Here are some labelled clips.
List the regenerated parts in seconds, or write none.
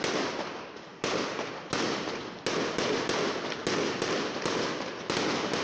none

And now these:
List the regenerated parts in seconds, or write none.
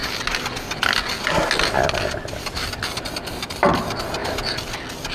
none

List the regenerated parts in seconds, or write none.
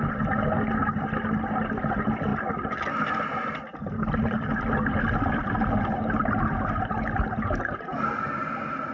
none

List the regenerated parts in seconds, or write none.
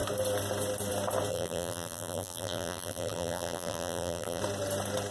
1.3-4.4 (vocoder, BigVGAN v2)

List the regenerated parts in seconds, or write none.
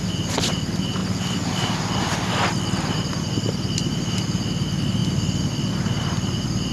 none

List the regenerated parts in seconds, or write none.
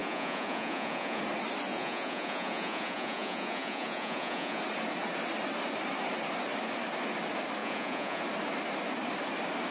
0.0-1.2 (vocoder, Vocos); 1.7-4.6; 7.6-8.2